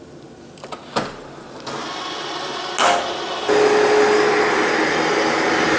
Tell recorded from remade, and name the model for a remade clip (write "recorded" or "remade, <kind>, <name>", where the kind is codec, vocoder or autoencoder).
recorded